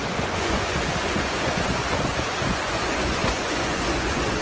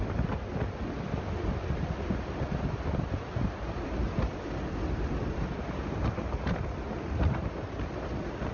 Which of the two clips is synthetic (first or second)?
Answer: first